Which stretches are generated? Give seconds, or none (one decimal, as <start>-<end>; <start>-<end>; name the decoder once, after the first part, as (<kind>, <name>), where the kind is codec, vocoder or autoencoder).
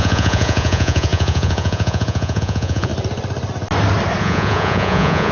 0.0-2.9 (vocoder, Vocos); 4.2-5.3